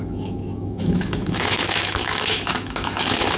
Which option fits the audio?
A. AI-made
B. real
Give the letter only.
A